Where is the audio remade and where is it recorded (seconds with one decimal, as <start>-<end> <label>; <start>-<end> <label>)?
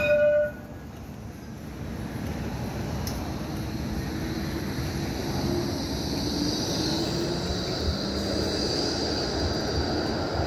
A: 0.0-5.2 recorded; 5.2-6.3 remade; 6.3-10.5 recorded